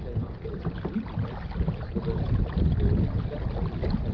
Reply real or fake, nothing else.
real